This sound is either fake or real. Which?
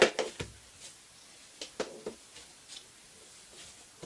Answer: real